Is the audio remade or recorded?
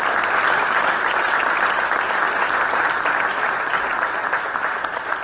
recorded